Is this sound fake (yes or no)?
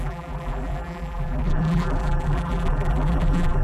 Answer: yes